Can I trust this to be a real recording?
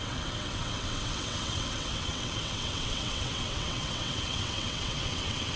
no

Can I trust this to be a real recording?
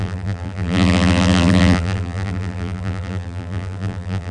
no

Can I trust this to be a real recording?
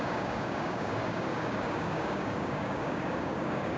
no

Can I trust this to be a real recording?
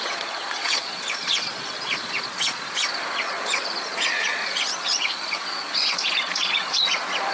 no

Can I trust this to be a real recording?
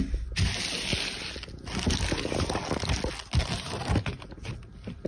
yes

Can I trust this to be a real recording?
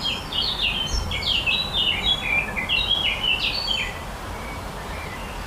no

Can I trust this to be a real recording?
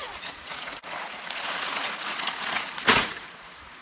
no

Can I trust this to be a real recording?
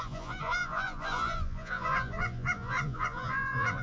no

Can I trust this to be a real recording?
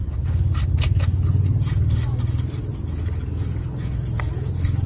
yes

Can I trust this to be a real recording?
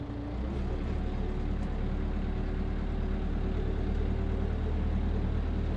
yes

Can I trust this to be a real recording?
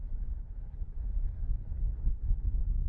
no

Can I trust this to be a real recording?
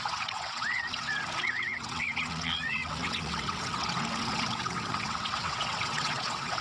no